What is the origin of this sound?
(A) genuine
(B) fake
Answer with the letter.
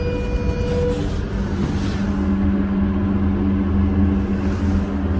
A